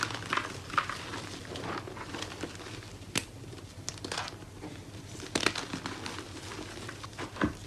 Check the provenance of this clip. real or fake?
real